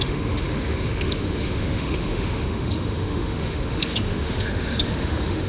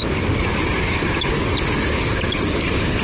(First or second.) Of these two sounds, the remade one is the first